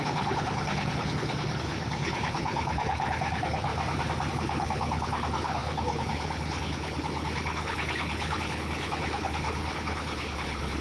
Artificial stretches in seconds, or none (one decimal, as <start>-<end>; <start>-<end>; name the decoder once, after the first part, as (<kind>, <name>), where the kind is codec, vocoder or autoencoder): 0.0-3.7 (codec, HILCodec); 4.3-10.8

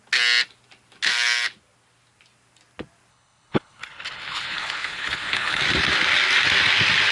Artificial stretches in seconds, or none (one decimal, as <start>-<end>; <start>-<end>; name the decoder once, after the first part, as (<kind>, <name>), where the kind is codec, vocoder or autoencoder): 3.1-5.6 (codec, HILCodec)

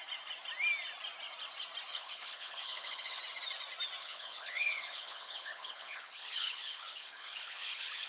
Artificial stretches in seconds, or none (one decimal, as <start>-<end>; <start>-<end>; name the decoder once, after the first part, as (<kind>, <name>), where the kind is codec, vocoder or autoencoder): 1.9-3.2 (codec, HILCodec); 4.0-8.1